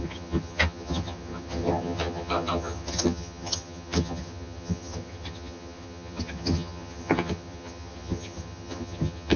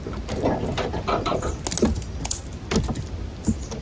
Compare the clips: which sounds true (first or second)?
second